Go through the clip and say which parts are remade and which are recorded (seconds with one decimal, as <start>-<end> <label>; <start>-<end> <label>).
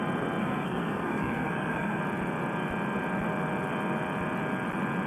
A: 0.0-0.4 recorded; 0.4-2.0 remade; 2.0-5.1 recorded